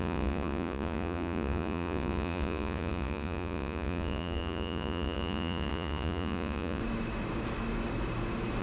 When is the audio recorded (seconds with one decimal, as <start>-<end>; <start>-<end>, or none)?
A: 6.8-8.6